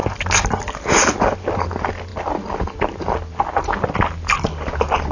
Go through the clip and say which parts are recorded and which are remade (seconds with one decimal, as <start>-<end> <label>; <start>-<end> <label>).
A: 0.0-5.1 recorded